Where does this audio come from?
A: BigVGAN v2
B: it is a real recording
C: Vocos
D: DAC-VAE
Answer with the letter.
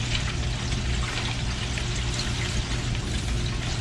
B